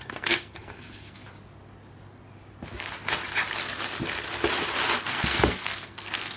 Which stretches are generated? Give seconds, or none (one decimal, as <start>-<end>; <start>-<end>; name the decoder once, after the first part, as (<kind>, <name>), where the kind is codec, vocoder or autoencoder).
0.0-1.2 (codec, SNAC); 5.0-6.4